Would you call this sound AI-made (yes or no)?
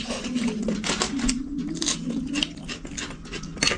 no